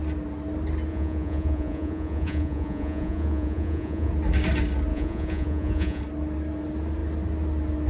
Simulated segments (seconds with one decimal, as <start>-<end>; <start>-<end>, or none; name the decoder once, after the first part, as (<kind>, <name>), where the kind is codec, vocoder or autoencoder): 0.9-4.1 (vocoder, Vocos); 4.9-6.0